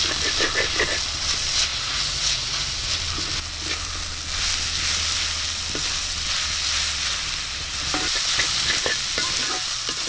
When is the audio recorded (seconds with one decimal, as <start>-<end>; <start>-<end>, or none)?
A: 0.0-1.7; 2.9-10.1